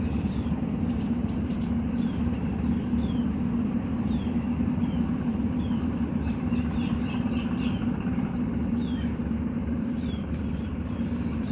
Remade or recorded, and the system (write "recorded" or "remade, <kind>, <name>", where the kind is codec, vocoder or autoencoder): remade, vocoder, BigVGAN v2